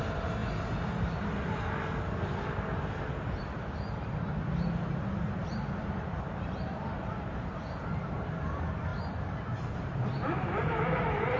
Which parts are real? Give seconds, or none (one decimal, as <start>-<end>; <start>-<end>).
0.4-3.4

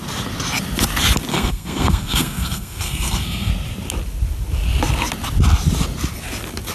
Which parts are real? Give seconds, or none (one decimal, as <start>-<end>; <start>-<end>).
0.0-1.3; 3.5-6.7

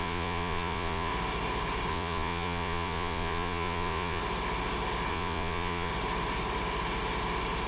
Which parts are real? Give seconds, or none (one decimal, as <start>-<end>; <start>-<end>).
1.1-1.9; 4.2-5.1; 5.9-7.7

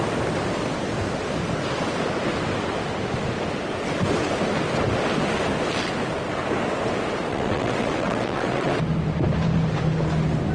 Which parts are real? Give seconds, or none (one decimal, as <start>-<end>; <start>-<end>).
0.0-7.3; 8.7-10.5

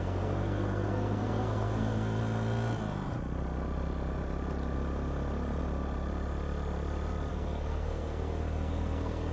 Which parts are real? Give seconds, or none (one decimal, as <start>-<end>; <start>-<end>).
2.2-7.3

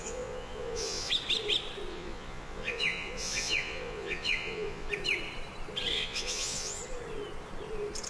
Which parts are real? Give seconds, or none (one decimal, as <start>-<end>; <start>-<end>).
1.1-1.9; 4.9-5.9; 6.8-8.1

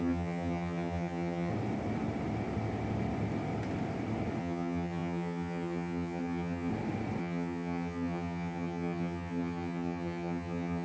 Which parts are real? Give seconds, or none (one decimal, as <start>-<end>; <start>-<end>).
1.5-4.4; 6.7-7.2

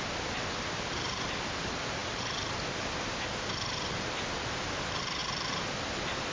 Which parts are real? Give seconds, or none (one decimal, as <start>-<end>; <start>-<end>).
0.0-6.3